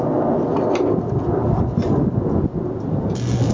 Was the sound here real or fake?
real